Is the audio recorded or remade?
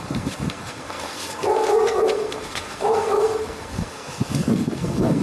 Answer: remade